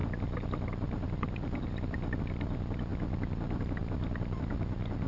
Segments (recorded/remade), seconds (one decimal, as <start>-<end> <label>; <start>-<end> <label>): 0.0-5.1 recorded